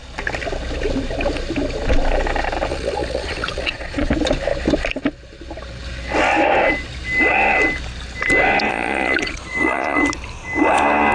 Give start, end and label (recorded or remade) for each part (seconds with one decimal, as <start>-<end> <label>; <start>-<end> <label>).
0.0-2.7 recorded; 2.7-4.1 remade; 4.1-8.7 recorded; 8.7-10.0 remade; 10.0-11.1 recorded